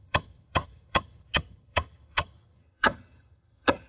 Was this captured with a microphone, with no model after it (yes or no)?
no